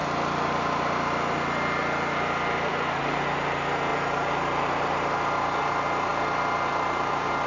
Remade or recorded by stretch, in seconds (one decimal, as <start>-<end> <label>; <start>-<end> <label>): 0.0-7.5 recorded